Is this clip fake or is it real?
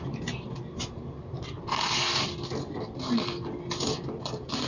real